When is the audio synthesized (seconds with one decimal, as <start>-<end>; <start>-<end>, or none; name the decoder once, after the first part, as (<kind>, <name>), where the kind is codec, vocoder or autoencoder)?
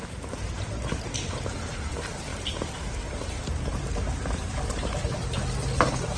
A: 0.0-6.2 (vocoder, BigVGAN v2)